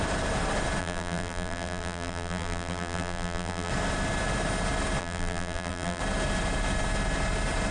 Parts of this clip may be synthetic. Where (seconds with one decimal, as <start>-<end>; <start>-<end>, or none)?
0.8-3.7; 5.0-6.0